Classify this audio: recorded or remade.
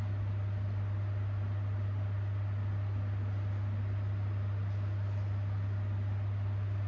recorded